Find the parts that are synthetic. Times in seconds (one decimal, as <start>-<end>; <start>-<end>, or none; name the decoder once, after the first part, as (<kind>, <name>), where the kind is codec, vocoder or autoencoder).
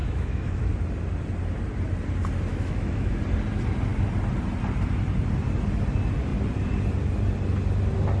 0.0-0.7 (autoencoder, DAC-VAE); 2.5-3.2